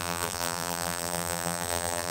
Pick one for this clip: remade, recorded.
remade